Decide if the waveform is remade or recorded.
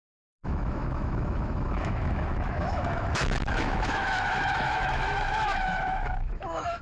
remade